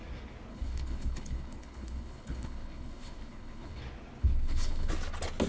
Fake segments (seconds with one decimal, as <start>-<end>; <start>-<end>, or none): 0.5-3.8; 4.2-4.9